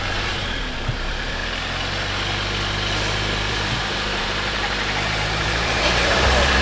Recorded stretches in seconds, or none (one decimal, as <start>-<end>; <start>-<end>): 1.4-3.5